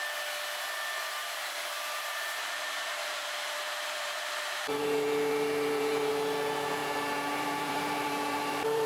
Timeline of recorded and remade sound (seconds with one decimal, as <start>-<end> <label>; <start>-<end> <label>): 0.0-1.2 recorded; 1.2-6.1 remade; 6.1-6.8 recorded; 6.8-8.9 remade